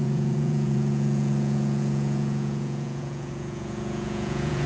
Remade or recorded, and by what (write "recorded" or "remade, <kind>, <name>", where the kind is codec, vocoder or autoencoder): remade, vocoder, Vocos